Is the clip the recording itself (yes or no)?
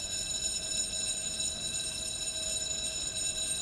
yes